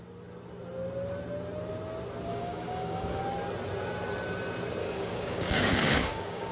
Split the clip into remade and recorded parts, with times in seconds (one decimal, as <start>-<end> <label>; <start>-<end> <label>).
0.0-2.3 recorded; 2.3-3.2 remade; 3.2-4.8 recorded; 4.8-6.5 remade